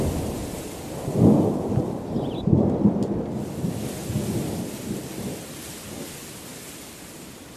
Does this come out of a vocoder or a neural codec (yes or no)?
no